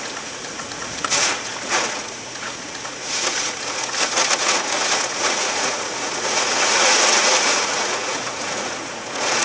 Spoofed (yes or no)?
yes